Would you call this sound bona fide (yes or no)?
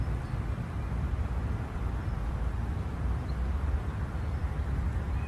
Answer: no